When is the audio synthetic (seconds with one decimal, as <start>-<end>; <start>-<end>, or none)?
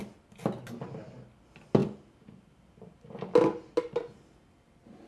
none